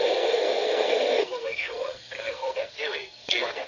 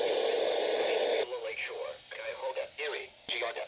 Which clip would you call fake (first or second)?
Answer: first